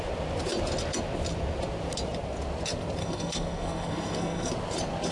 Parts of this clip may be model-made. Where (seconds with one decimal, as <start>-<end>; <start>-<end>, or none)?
3.0-4.5